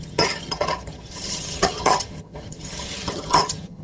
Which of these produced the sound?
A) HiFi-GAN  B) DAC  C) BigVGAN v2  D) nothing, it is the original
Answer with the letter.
A